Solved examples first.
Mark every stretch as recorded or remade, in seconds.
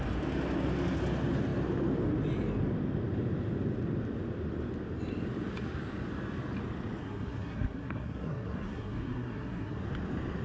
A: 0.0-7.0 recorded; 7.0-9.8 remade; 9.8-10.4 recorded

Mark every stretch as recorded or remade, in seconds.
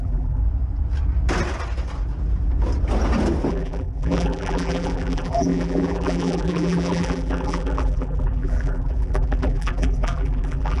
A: 0.0-0.4 remade; 0.4-3.5 recorded; 3.5-10.8 remade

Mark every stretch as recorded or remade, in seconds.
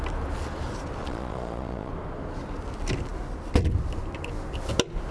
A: 0.0-1.0 recorded; 1.0-1.9 remade; 1.9-5.1 recorded